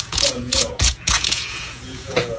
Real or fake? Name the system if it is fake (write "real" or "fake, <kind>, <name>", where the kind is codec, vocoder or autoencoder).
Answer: fake, vocoder, Vocos